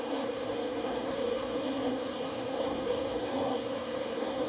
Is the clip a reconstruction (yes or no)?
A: yes